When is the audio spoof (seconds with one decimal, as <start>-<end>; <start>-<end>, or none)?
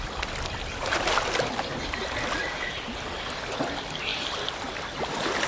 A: none